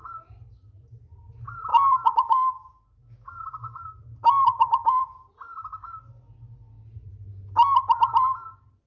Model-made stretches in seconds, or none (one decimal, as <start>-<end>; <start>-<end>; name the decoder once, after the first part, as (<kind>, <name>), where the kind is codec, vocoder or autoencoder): 1.7-5.3 (codec, DAC)